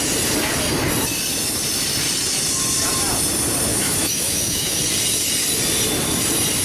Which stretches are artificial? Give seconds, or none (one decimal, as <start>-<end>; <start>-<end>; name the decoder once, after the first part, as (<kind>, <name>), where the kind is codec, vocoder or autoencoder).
3.7-4.8 (autoencoder, DAC-VAE)